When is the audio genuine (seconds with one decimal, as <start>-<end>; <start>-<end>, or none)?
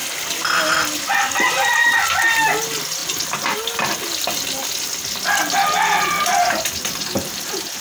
0.0-7.8